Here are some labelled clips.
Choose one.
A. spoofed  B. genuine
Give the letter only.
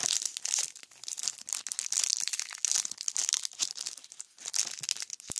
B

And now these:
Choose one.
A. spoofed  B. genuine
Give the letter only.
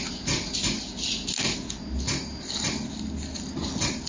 B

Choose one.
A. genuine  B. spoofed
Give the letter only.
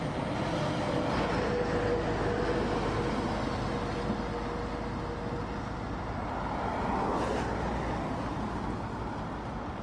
A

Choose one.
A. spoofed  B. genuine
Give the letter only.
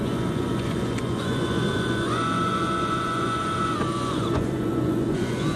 A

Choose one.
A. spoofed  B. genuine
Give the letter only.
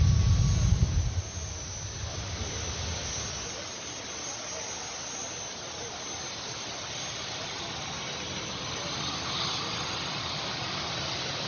B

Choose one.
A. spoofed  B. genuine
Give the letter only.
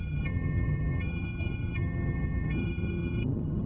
A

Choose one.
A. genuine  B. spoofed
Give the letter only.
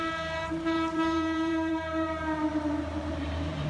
B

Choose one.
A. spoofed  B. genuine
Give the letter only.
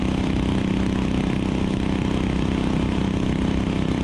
B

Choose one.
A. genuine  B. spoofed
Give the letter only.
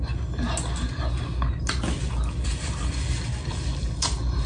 A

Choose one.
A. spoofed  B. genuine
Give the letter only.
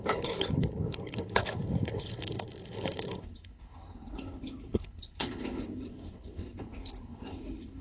A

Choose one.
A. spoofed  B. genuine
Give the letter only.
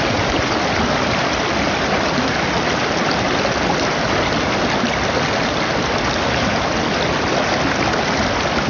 B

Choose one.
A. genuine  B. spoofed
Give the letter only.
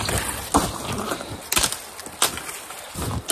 A